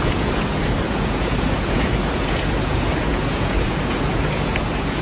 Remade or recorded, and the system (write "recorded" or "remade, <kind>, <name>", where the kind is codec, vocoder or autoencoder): remade, vocoder, Vocos